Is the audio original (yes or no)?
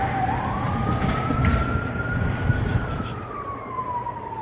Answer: no